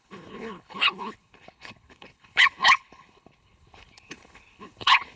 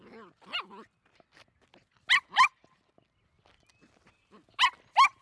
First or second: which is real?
second